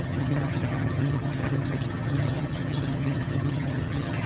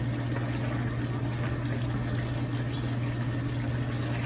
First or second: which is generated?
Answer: first